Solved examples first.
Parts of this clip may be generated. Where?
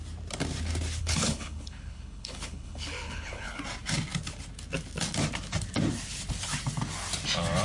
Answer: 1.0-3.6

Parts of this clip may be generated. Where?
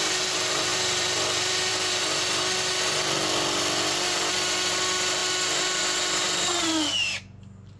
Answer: 0.7-1.7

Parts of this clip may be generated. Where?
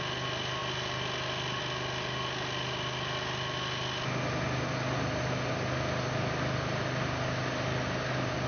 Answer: none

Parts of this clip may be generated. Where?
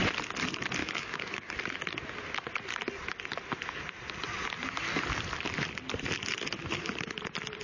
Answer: 0.8-1.5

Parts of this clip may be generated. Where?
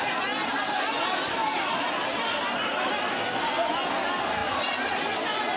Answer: 3.1-3.7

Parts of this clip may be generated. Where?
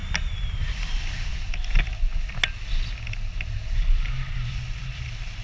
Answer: 0.7-1.3; 4.5-5.4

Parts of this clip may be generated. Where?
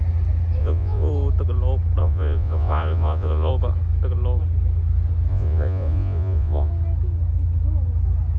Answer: 0.6-1.1; 2.0-3.5; 5.3-6.7